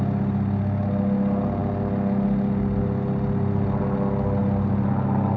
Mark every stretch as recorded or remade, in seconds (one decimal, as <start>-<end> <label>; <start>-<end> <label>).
0.0-5.4 recorded